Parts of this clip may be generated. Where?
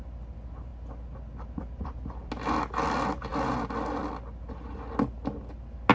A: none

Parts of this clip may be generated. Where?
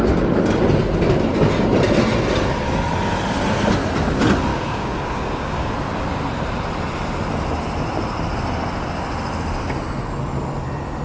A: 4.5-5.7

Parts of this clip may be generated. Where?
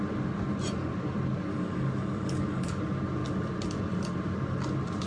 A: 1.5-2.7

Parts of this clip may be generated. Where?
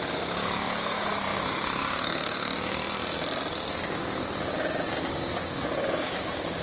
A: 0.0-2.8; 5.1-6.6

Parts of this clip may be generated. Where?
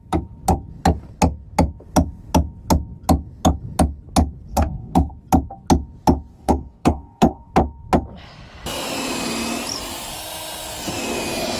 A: 4.5-5.1; 6.3-7.5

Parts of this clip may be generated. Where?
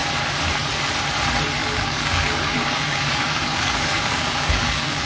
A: 1.6-5.1